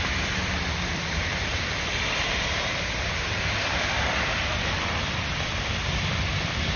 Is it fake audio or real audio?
fake